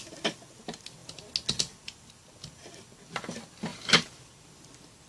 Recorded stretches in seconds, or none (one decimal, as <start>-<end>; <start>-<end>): 0.0-3.7; 4.4-5.1